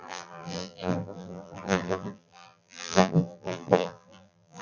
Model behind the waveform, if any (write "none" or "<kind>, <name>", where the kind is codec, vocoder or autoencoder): vocoder, BigVGAN v2